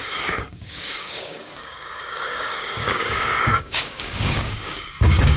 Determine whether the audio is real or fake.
fake